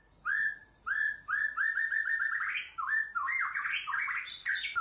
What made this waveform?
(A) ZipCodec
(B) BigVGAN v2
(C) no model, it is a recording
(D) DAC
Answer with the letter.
C